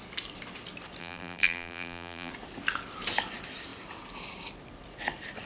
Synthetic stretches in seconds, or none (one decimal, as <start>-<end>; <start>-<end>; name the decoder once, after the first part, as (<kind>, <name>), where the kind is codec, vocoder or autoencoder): 1.0-2.3 (vocoder, BigVGAN v2)

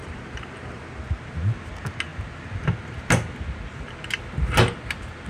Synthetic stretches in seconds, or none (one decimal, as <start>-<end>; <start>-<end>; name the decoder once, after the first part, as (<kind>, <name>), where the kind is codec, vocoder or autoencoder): 0.0-0.8 (vocoder, BigVGAN v2)

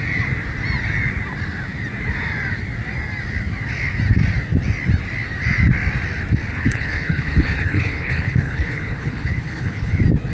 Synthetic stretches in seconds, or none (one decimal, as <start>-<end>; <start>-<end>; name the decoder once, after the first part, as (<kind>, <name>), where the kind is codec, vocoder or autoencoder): 6.5-9.9 (codec, HILCodec)

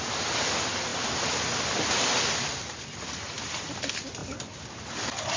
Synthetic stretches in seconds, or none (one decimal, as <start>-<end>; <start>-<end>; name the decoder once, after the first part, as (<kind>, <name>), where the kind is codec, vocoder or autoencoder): none

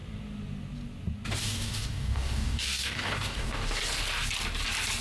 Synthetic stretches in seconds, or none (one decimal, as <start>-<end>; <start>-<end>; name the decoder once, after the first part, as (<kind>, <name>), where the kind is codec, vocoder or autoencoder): 1.4-3.8 (codec, DAC)